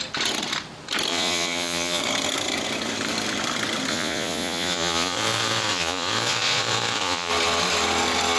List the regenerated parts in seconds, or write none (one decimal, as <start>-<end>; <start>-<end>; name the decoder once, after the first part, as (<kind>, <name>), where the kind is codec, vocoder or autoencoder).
1.1-2.0 (vocoder, Vocos); 3.9-7.3